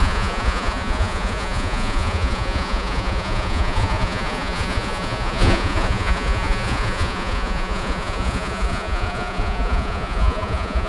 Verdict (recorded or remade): remade